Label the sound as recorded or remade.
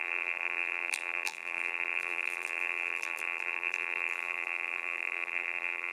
remade